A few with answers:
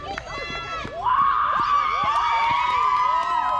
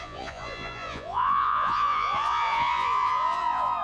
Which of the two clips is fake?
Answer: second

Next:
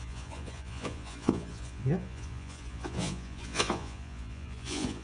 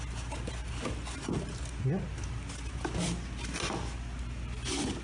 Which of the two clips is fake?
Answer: first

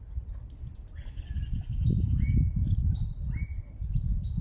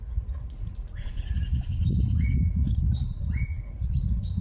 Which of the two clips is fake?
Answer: second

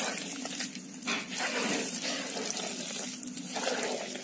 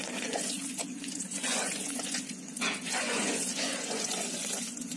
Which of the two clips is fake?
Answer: second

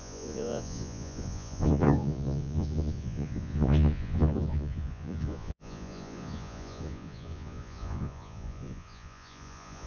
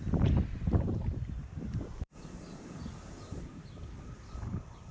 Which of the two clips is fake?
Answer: first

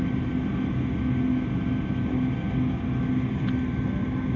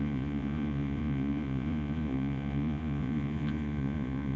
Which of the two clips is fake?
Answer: second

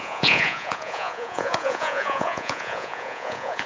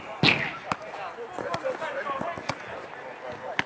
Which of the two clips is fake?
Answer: first